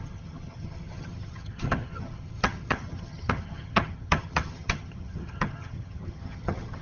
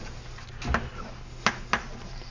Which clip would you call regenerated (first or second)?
first